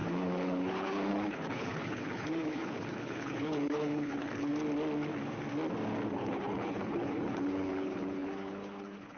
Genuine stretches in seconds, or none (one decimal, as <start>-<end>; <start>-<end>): 4.5-6.1